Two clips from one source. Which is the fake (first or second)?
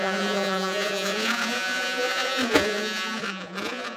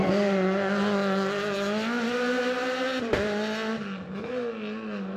first